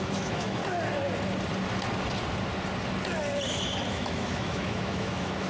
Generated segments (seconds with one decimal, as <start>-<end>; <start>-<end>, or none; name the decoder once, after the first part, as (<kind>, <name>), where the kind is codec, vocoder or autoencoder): 0.0-0.6 (autoencoder, DAC-VAE); 3.9-5.5